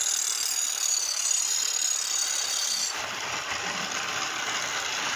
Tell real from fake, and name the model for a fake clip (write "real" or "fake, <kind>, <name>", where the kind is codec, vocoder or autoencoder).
real